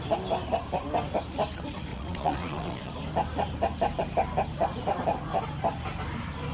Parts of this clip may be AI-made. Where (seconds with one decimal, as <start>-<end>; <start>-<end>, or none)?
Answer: 1.9-2.9